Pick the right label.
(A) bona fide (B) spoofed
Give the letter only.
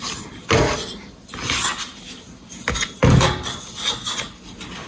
A